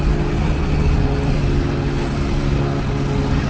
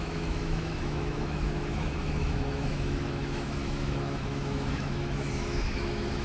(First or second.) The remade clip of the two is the second